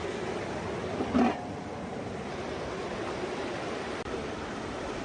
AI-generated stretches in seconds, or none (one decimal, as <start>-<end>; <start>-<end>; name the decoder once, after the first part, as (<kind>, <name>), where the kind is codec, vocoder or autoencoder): 1.9-5.0 (vocoder, BigVGAN v2)